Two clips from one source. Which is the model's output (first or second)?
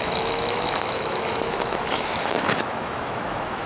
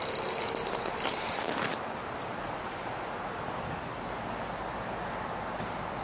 first